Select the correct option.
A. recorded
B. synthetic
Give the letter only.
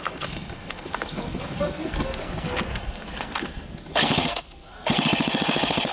B